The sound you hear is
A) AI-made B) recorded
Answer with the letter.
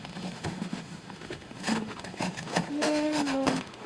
A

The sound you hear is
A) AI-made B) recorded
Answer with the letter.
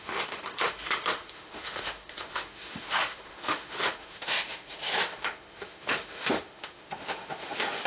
A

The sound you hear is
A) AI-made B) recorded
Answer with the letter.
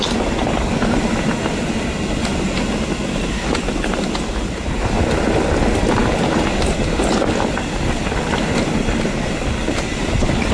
B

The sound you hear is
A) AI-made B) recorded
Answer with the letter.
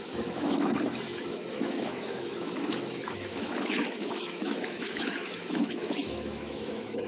A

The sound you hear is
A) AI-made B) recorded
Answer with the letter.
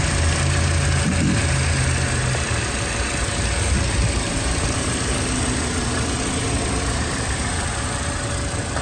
B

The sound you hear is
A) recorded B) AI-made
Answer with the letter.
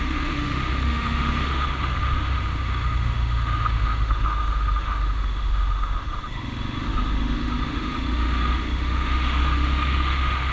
B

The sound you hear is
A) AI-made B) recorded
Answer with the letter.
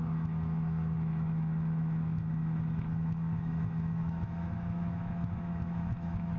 A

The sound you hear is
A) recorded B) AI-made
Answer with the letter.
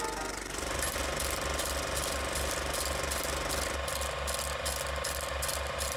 A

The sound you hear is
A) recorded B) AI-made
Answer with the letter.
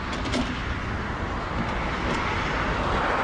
A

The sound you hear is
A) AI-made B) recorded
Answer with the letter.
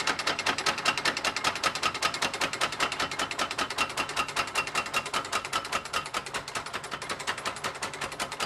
B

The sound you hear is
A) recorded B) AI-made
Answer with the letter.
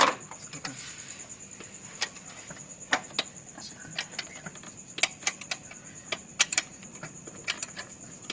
A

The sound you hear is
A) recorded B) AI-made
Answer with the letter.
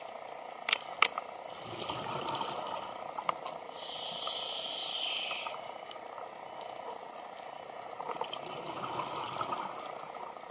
A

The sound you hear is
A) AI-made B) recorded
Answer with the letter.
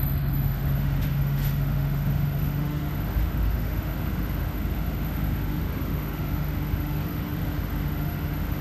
A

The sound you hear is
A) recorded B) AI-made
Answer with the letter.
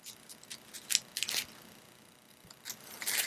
A